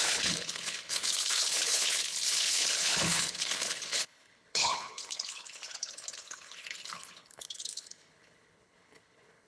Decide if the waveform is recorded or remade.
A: remade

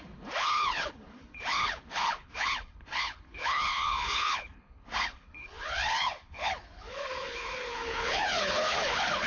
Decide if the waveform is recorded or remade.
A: remade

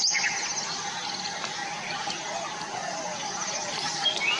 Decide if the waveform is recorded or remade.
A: recorded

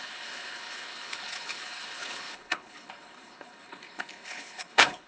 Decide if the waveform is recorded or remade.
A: remade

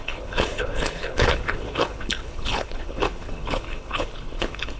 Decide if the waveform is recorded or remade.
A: remade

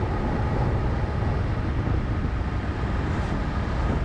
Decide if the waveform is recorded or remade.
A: recorded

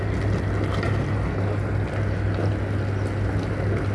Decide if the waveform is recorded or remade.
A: recorded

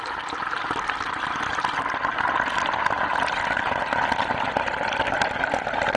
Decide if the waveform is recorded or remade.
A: recorded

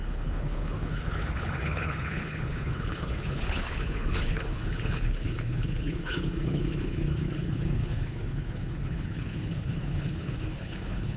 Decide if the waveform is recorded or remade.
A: remade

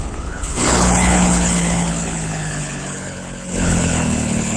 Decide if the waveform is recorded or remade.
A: remade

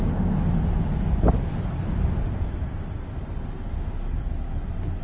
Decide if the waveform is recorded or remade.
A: recorded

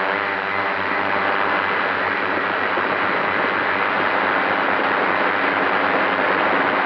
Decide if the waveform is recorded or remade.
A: recorded